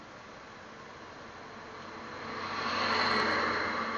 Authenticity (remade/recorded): recorded